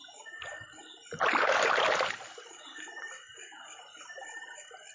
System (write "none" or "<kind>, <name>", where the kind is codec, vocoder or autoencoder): vocoder, BigVGAN v2